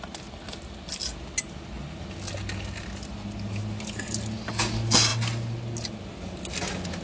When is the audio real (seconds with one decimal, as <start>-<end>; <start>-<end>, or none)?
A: 0.0-7.0